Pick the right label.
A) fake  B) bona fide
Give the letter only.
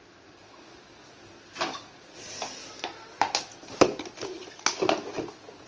B